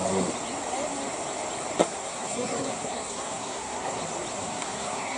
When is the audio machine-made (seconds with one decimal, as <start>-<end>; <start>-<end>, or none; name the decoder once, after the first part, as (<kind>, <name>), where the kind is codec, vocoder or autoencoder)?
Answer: 1.8-4.0 (codec, SNAC); 4.4-5.2